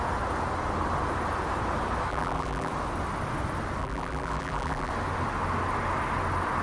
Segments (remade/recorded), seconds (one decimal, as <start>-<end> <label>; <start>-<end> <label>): 0.0-2.1 recorded; 2.1-2.7 remade; 2.7-3.8 recorded; 3.8-4.9 remade; 4.9-6.6 recorded